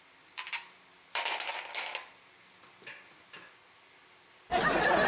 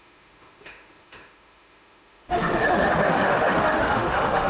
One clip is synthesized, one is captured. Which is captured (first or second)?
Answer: first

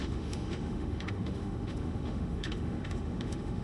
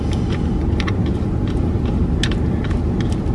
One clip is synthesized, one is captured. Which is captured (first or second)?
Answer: second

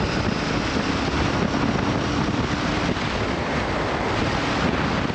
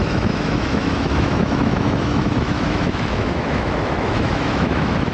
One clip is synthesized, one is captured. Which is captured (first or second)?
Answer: first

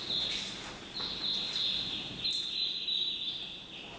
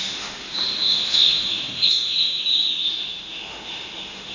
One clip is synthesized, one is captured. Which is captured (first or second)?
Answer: first